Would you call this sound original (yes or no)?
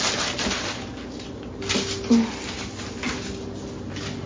yes